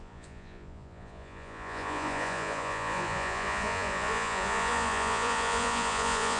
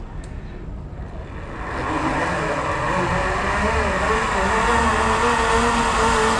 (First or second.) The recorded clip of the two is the second